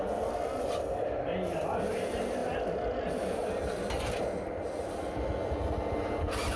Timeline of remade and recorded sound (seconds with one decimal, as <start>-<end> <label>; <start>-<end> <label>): 0.0-6.6 recorded